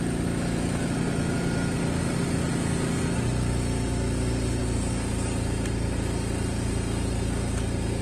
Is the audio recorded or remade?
recorded